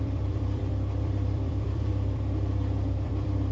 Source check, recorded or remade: remade